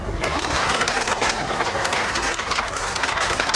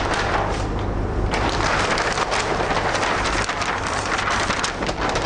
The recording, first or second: second